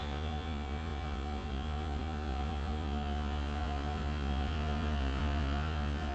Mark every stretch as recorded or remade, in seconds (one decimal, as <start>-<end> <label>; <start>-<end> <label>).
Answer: 0.0-6.1 remade